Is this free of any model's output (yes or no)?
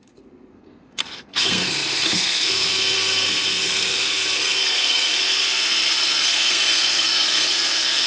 no